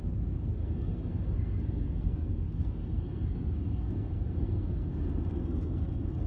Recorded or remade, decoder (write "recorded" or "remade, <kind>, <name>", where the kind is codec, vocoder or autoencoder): remade, codec, SNAC